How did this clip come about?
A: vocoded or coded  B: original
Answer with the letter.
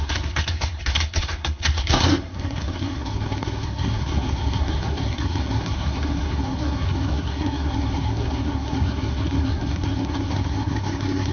A